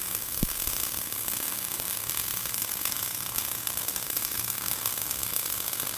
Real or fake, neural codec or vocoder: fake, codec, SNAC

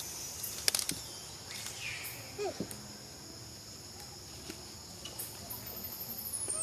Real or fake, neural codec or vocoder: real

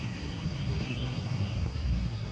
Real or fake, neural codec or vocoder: fake, codec, SNAC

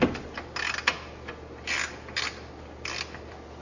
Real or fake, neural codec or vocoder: real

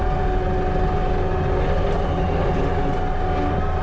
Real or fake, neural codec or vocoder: real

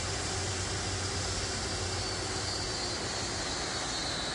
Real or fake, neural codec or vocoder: real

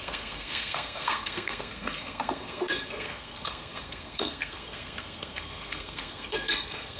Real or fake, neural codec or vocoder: fake, codec, SNAC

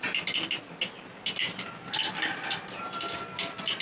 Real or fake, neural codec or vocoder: real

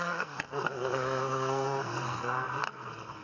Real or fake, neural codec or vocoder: fake, codec, SNAC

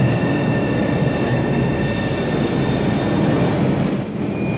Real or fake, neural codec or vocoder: real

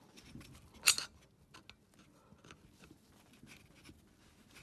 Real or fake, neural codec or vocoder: real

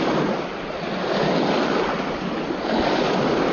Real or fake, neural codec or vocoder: real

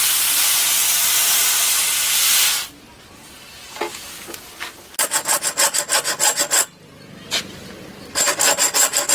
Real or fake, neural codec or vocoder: real